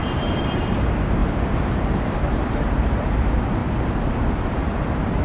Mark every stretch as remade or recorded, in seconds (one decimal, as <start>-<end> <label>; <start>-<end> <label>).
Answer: 0.0-3.6 remade; 3.6-4.4 recorded; 4.4-5.2 remade